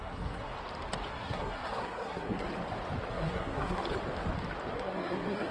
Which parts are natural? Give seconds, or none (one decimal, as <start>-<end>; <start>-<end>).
0.5-1.1; 2.5-3.1; 3.8-4.7